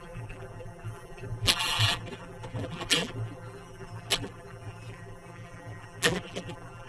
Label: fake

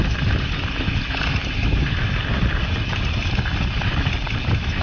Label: real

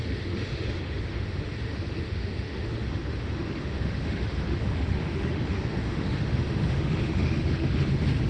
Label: fake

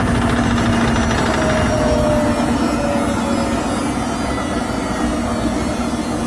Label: real